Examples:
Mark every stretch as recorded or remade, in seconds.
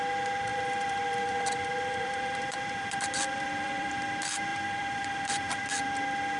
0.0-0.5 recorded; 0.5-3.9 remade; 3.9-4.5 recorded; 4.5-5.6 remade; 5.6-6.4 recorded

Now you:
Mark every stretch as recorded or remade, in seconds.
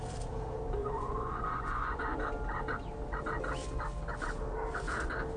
0.0-0.8 recorded; 0.8-2.2 remade; 2.2-5.4 recorded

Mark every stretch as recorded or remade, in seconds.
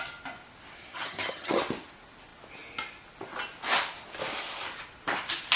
0.0-0.9 recorded; 0.9-1.6 remade; 1.6-5.6 recorded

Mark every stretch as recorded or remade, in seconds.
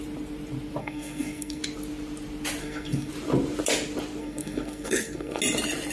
0.0-0.8 recorded; 0.8-1.6 remade; 1.6-2.6 recorded; 2.6-3.1 remade; 3.1-4.2 recorded; 4.2-5.4 remade; 5.4-5.9 recorded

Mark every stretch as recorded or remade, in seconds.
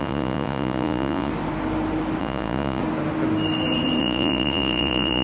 0.0-1.3 remade; 1.3-2.2 recorded; 2.2-2.8 remade; 2.8-4.0 recorded; 4.0-5.2 remade